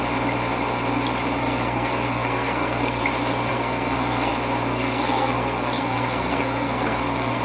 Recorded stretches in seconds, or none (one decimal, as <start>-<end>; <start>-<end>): 0.0-1.4; 3.0-3.5; 4.3-4.7